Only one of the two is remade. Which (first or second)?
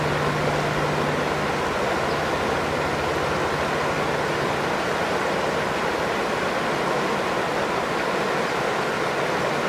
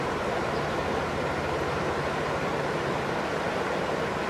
second